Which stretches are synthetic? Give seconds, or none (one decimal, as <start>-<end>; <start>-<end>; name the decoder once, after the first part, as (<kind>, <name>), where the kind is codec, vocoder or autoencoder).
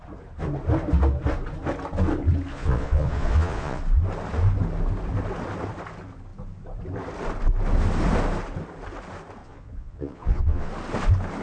2.5-3.8 (vocoder, Vocos); 9.4-10.7